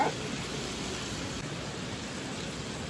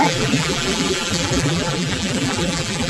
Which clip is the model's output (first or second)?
second